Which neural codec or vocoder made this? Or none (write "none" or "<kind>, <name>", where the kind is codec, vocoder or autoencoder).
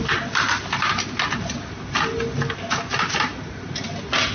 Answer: none